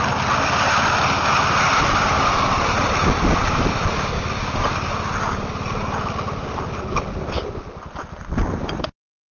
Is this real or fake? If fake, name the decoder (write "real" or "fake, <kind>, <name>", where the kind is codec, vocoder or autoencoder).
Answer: real